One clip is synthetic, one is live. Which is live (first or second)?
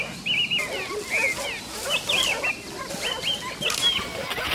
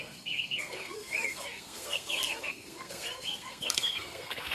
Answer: first